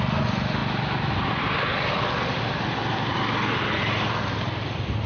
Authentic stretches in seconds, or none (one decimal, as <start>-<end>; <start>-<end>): 0.0-5.1